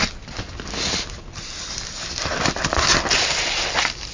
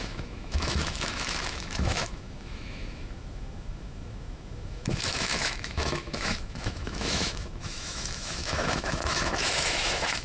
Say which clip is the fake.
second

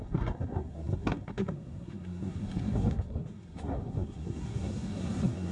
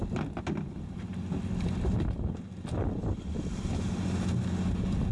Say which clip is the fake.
first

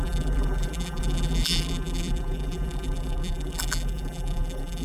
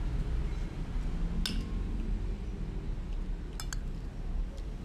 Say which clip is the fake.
first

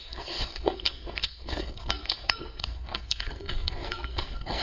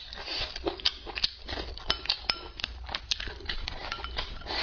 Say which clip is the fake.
first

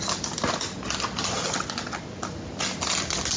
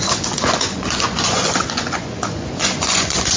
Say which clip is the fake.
second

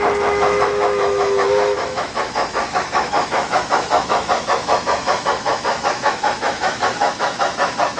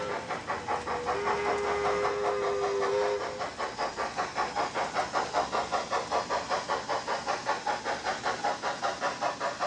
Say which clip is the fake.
first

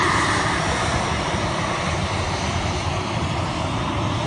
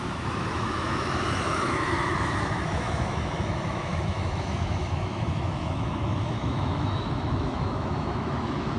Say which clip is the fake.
second